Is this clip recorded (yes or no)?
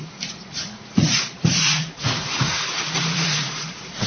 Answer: no